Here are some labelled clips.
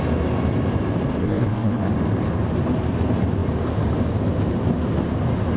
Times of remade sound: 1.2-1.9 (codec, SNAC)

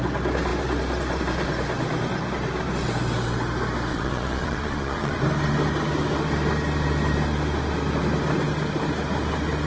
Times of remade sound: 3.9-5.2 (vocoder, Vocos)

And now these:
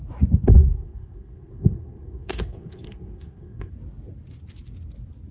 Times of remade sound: 0.5-3.7 (codec, SNAC)

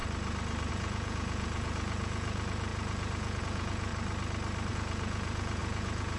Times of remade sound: 0.7-3.9 (vocoder, Vocos); 4.7-6.2

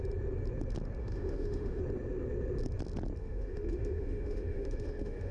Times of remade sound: 1.0-1.8 (autoencoder, DAC-VAE); 3.2-5.3

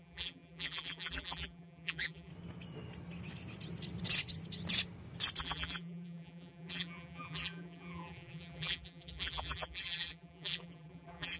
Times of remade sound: 0.0-2.3 (vocoder, BigVGAN v2); 5.4-11.4